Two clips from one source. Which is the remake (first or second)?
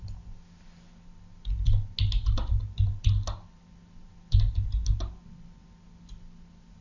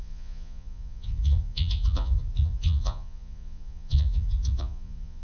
second